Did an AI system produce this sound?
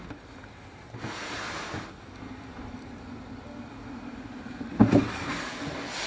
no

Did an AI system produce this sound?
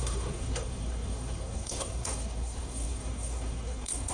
yes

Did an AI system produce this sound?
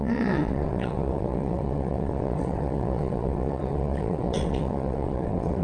yes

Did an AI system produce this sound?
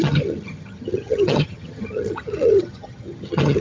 yes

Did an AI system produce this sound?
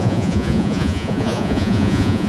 yes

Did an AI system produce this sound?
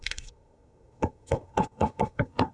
yes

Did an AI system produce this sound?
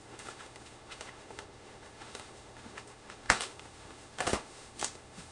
yes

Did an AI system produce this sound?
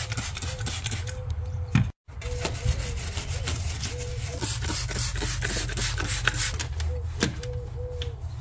no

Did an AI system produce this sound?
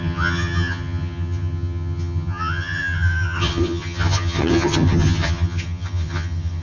yes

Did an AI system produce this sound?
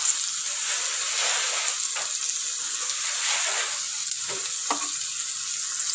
no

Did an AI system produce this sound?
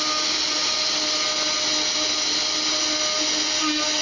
no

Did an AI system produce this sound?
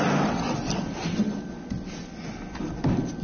yes